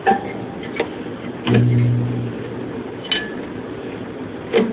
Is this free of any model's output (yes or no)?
yes